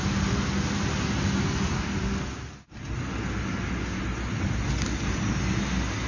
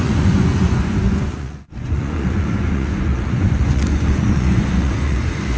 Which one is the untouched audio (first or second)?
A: first